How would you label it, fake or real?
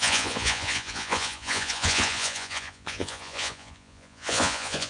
fake